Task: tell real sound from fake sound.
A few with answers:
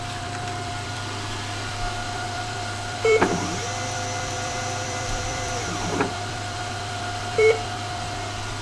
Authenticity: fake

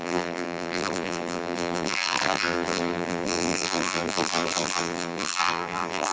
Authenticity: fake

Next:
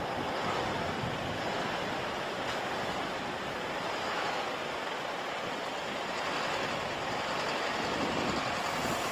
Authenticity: real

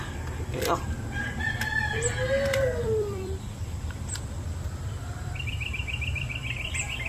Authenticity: fake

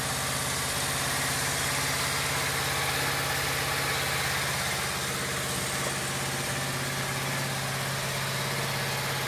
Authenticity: real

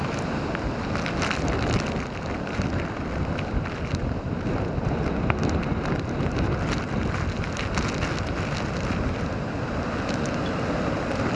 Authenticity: real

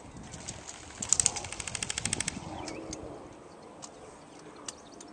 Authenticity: real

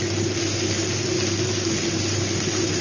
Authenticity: real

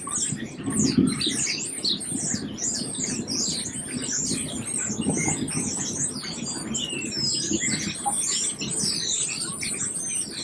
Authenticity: fake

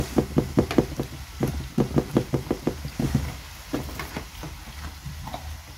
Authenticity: real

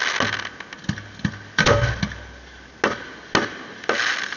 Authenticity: real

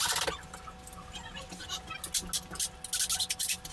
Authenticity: real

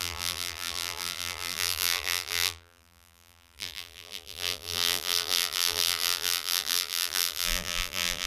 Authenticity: fake